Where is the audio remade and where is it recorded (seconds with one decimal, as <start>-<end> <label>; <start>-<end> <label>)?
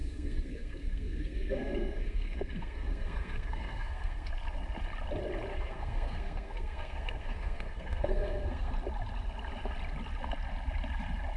0.0-4.3 remade; 4.3-5.5 recorded; 5.5-8.7 remade; 8.7-11.4 recorded